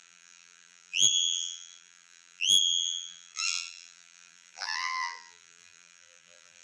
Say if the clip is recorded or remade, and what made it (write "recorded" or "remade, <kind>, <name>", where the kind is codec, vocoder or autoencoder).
remade, vocoder, BigVGAN v2